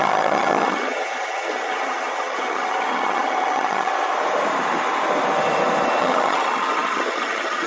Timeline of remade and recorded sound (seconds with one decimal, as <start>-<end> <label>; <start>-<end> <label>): 0.0-3.9 remade; 3.9-6.0 recorded; 6.0-7.7 remade